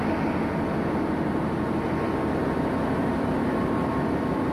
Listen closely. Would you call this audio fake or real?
real